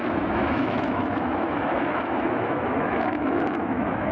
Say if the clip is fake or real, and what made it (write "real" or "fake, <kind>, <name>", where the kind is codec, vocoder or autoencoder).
fake, autoencoder, DAC-VAE